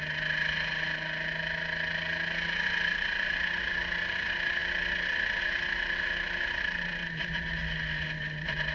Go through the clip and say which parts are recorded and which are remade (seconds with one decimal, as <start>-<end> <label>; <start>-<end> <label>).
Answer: 0.0-8.7 recorded